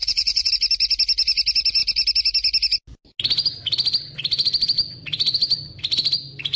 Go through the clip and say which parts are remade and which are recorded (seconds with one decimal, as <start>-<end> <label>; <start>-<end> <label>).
0.0-0.5 remade; 0.5-6.6 recorded